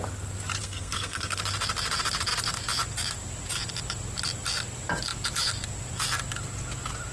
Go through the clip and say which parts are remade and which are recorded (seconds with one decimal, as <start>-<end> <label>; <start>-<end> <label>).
0.0-0.6 recorded; 0.6-1.4 remade; 1.4-7.1 recorded